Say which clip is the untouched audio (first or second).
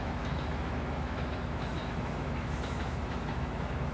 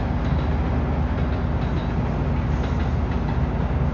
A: second